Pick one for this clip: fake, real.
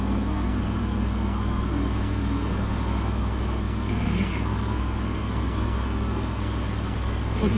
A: fake